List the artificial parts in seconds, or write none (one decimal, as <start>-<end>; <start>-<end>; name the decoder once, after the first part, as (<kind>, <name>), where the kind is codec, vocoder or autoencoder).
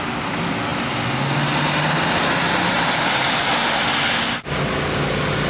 none